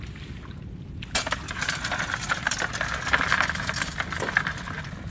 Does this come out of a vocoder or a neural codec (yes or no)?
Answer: no